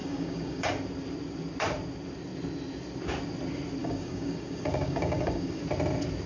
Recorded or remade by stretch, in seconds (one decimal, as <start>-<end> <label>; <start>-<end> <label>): 0.0-0.7 remade; 0.7-3.8 recorded; 3.8-5.6 remade; 5.6-6.3 recorded